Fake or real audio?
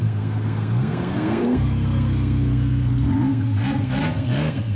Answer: fake